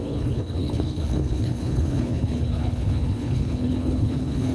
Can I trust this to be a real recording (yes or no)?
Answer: no